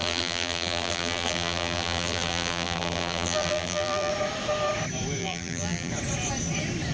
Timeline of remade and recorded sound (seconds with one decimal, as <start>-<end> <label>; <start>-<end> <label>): 0.0-4.1 remade; 4.1-5.2 recorded; 5.2-5.9 remade; 5.9-6.9 recorded